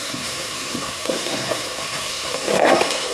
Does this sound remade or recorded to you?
remade